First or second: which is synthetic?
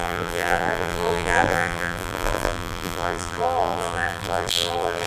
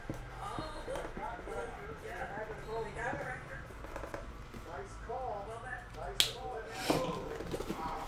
first